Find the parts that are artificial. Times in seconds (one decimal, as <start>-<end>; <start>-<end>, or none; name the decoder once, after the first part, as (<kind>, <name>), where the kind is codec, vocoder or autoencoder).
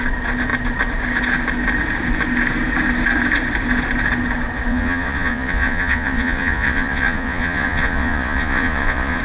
4.7-9.2 (vocoder, Vocos)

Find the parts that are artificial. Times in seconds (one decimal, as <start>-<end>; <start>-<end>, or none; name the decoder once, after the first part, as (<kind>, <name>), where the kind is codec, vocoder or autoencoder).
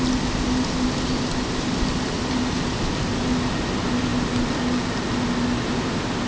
none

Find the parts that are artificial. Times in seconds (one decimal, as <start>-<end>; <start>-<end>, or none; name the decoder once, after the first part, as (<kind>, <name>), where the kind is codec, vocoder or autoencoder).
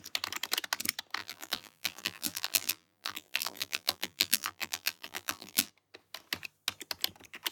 1.2-5.7 (vocoder, BigVGAN v2)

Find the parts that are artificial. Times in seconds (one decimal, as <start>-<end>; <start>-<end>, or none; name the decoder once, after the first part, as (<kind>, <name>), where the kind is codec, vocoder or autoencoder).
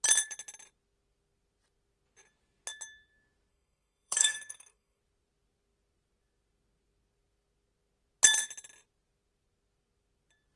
3.5-5.0 (codec, SNAC)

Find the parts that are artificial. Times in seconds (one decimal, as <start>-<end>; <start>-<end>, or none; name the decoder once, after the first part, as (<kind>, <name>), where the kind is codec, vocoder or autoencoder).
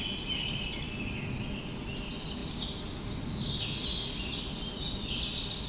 none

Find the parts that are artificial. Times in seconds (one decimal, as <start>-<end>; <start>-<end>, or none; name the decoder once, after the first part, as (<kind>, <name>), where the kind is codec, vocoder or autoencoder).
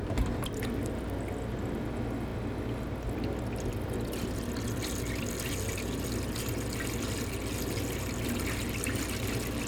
none